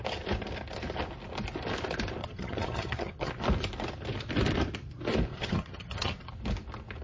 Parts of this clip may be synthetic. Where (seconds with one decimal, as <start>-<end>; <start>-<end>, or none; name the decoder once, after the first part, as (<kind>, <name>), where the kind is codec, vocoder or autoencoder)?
2.2-3.3 (vocoder, HiFi-GAN); 5.3-6.3

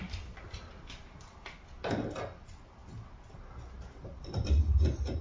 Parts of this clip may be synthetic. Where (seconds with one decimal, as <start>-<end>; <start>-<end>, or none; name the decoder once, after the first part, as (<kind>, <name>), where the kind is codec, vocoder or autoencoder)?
none

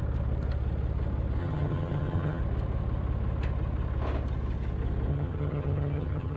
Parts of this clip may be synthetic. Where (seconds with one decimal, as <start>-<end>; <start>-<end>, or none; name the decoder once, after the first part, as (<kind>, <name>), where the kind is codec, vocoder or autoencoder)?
1.4-2.4 (vocoder, HiFi-GAN); 5.1-6.4

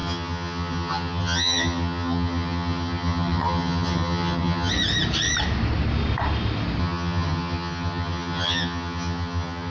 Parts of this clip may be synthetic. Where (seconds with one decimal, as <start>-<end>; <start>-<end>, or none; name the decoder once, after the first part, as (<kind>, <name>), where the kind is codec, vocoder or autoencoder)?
0.0-4.7 (vocoder, HiFi-GAN); 6.8-9.7